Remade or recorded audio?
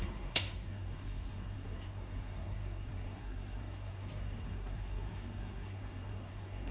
remade